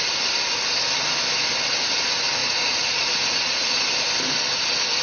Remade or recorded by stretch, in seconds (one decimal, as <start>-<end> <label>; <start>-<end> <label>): 0.0-2.4 recorded; 2.4-3.7 remade; 3.7-5.0 recorded